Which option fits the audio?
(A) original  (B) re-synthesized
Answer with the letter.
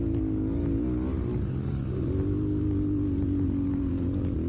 A